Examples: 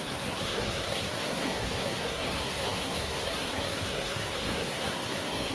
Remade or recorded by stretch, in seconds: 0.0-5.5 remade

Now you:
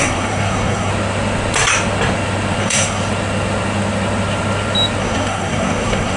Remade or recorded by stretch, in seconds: 0.0-0.9 remade; 0.9-2.6 recorded; 2.6-3.0 remade; 3.0-5.0 recorded; 5.0-6.2 remade

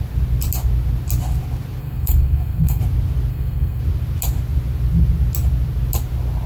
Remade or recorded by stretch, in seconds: 0.0-1.8 recorded; 1.8-2.8 remade; 2.8-3.3 recorded; 3.3-3.8 remade; 3.8-6.5 recorded

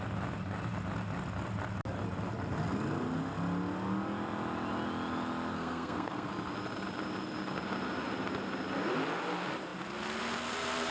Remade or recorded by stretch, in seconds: 0.0-5.5 recorded; 5.5-6.3 remade; 6.3-10.9 recorded

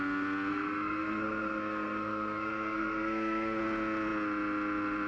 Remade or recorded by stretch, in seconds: 0.0-0.5 recorded; 0.5-3.6 remade; 3.6-5.1 recorded

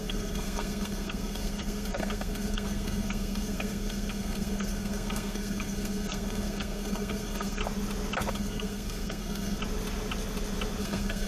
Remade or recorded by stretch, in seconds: 0.0-7.6 remade; 7.6-8.3 recorded; 8.3-9.6 remade; 9.6-10.8 recorded; 10.8-11.3 remade